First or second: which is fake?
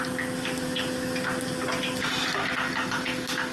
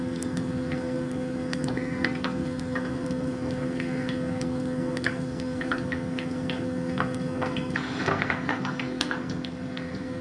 second